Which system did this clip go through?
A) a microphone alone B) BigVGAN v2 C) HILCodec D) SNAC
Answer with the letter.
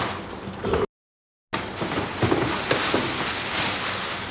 A